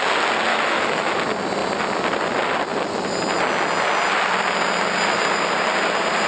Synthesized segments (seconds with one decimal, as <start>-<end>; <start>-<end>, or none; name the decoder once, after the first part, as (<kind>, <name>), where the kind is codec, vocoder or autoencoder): 0.5-1.1 (autoencoder, DAC-VAE)